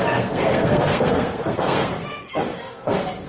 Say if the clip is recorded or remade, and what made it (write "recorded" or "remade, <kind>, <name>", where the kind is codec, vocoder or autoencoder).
remade, codec, SNAC